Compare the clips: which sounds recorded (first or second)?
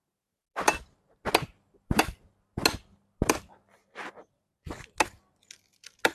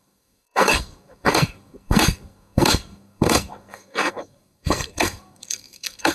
first